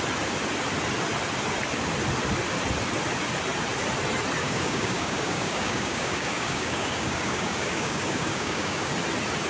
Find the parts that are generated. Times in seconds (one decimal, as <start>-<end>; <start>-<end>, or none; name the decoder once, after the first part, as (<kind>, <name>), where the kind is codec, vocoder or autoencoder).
4.4-8.9 (codec, DAC)